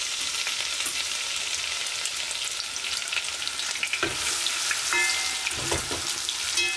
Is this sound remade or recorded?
recorded